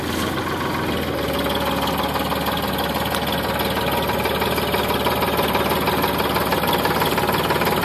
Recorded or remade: recorded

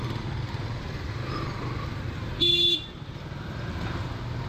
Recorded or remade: recorded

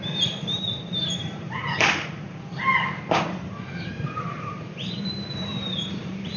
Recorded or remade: remade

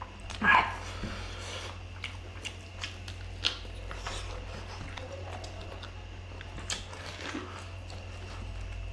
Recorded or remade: recorded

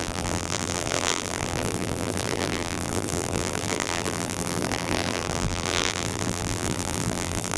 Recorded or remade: remade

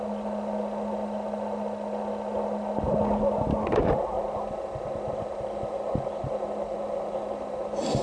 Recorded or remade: recorded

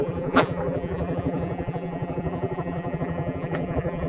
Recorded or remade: remade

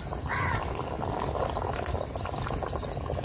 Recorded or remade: recorded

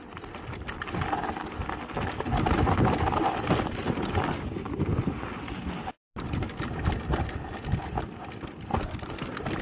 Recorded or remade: recorded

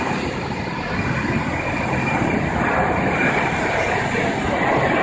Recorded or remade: recorded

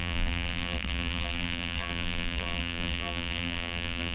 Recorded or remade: remade